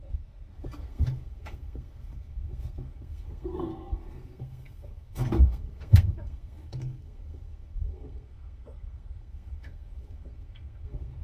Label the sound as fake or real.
fake